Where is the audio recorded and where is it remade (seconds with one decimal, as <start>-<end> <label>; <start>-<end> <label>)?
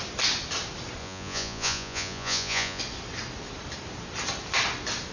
0.0-1.0 recorded; 1.0-2.8 remade; 2.8-5.1 recorded